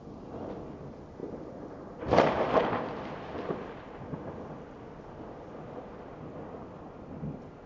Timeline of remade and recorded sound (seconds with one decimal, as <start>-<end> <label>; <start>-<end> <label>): 0.0-7.7 recorded